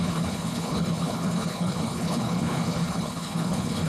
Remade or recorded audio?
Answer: remade